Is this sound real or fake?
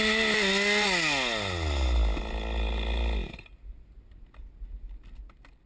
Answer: real